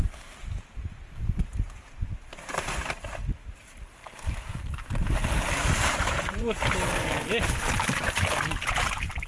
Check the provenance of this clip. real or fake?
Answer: fake